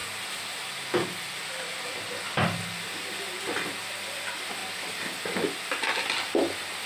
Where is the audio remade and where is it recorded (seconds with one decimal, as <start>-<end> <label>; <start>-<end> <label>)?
0.0-6.9 recorded